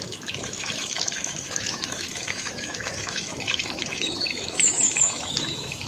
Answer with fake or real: fake